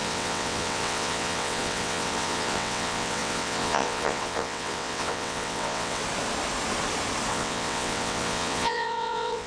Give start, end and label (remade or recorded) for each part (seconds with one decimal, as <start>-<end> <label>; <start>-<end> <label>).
0.0-6.0 remade; 6.0-7.3 recorded; 7.3-9.5 remade